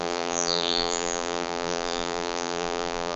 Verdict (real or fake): fake